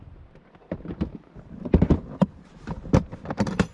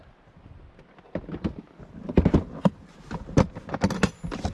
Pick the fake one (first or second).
first